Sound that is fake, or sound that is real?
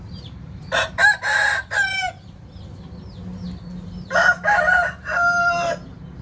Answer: real